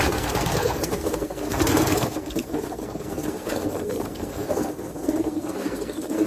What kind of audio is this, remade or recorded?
remade